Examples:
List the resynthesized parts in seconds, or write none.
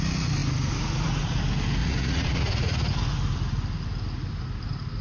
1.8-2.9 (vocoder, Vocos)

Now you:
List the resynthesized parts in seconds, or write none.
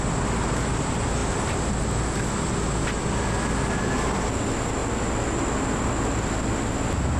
none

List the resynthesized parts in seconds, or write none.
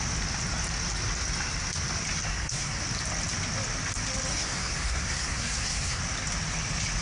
2.3-2.8 (codec, SNAC); 4.3-6.0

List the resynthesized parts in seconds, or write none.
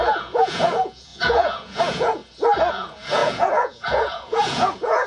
0.0-2.2 (vocoder, Vocos); 2.7-5.1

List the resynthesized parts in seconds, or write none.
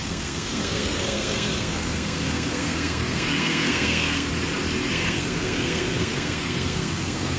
0.0-4.3 (codec, SNAC); 4.9-7.4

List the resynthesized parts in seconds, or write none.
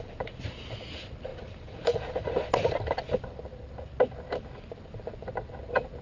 none